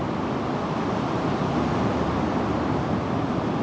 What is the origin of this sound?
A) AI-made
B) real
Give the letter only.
B